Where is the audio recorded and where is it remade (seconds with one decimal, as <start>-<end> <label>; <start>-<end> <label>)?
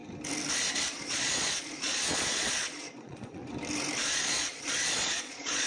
0.0-0.7 recorded; 0.7-3.4 remade; 3.4-4.0 recorded; 4.0-5.7 remade